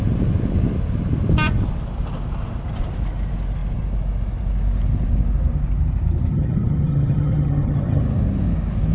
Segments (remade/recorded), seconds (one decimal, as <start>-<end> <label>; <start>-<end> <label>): 0.0-6.3 recorded; 6.3-8.0 remade; 8.0-8.9 recorded